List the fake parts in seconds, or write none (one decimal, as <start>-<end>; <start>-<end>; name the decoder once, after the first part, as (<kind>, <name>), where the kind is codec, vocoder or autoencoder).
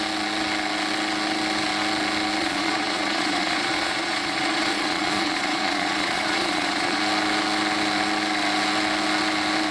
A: 2.4-7.0 (vocoder, Vocos)